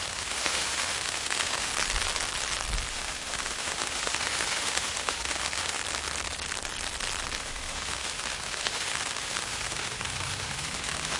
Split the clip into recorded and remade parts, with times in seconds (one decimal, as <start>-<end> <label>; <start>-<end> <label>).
0.0-1.7 remade; 1.7-2.9 recorded; 2.9-5.8 remade; 5.8-7.4 recorded; 7.4-11.2 remade

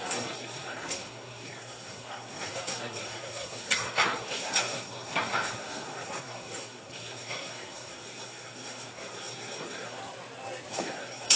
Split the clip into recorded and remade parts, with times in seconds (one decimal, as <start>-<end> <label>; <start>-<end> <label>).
0.0-10.0 remade; 10.0-10.7 recorded; 10.7-11.4 remade

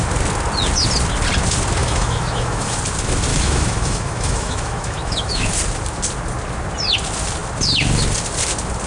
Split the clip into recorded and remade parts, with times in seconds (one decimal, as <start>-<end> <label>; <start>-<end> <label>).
0.0-1.8 recorded; 1.8-2.8 remade; 2.8-3.3 recorded; 3.3-5.5 remade; 5.5-8.9 recorded

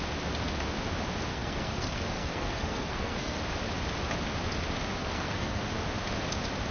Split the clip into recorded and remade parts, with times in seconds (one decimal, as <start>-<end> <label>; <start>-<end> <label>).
0.0-1.3 recorded; 1.3-3.4 remade; 3.4-5.0 recorded; 5.0-5.6 remade; 5.6-6.7 recorded